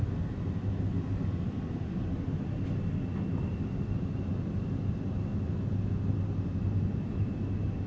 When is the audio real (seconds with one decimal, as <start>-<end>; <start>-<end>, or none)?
0.0-7.9

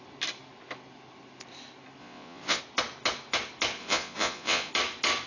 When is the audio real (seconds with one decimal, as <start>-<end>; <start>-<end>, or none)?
0.0-2.0; 2.6-3.8; 4.7-5.3

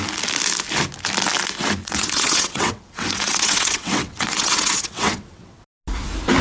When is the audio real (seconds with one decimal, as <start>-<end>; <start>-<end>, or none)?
0.0-1.8; 5.6-6.4

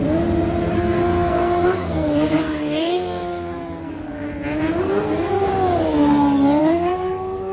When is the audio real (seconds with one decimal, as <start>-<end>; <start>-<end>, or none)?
0.0-0.7; 4.3-4.8; 5.5-6.6

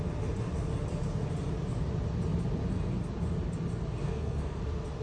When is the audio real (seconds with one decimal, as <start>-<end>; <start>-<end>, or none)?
0.0-4.0; 4.6-5.0

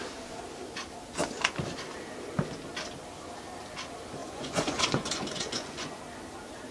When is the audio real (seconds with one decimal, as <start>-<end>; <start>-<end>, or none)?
0.0-4.2; 6.0-6.7